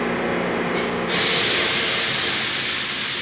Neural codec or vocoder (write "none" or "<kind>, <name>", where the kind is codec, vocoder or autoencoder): none